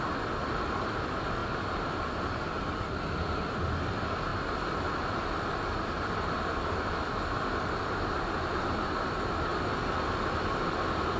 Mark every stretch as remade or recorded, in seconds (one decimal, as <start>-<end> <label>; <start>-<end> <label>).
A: 0.0-11.2 recorded